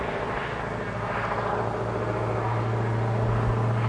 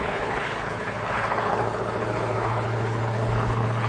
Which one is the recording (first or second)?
first